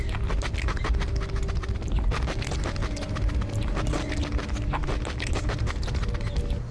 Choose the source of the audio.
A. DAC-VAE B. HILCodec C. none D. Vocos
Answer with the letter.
C